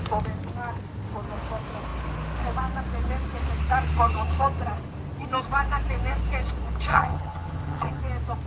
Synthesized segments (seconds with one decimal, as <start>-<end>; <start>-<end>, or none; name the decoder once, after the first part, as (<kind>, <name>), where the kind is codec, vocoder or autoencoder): 6.9-8.0 (vocoder, HiFi-GAN)